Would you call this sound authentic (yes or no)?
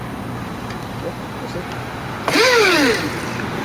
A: no